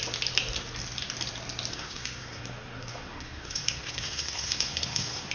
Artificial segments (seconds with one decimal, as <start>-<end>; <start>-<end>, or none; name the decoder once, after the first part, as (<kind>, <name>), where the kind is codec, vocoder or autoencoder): 1.7-5.3 (codec, SNAC)